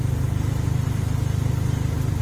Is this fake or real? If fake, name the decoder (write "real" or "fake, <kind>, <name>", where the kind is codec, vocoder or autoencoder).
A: real